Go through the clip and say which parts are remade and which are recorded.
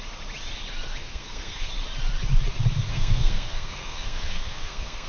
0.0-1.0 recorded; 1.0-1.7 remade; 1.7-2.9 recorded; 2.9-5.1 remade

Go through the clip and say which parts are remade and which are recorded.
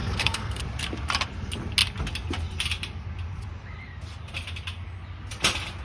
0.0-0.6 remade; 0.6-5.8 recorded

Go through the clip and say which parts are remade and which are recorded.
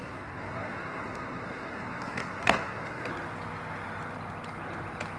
0.0-3.1 remade; 3.1-5.2 recorded